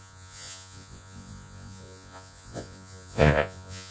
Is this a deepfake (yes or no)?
yes